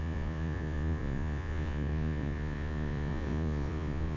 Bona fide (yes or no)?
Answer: no